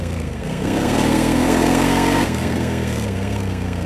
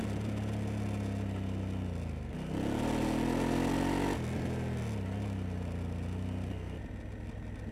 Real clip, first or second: second